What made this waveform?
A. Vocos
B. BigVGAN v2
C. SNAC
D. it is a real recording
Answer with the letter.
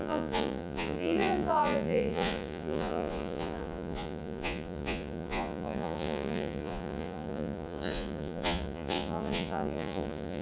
A